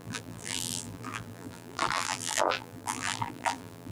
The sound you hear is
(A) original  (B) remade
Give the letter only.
B